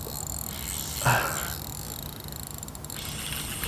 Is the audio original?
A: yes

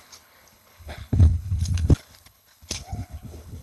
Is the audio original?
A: no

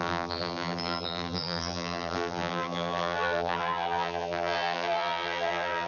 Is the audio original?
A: no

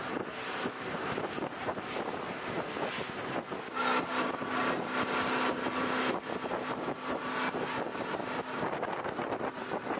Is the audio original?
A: yes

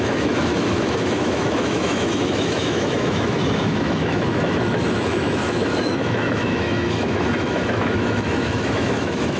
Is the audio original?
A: no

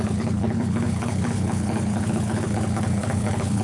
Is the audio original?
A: no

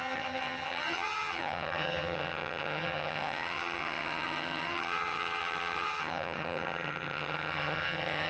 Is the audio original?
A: no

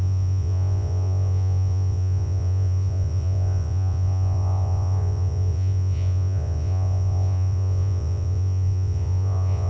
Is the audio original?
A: no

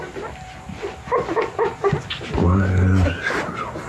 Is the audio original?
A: yes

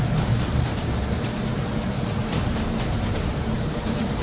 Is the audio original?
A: no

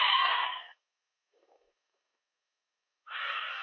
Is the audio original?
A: no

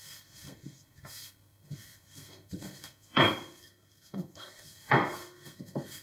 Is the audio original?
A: no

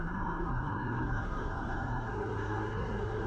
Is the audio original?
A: no